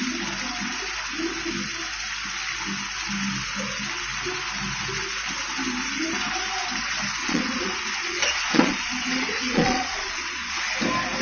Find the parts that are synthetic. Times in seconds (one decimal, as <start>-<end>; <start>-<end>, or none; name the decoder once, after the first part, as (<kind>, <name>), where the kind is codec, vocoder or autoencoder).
7.2-10.6 (vocoder, Vocos)